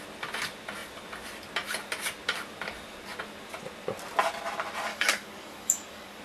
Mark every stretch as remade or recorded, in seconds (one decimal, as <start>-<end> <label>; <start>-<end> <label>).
0.0-4.9 recorded; 4.9-6.2 remade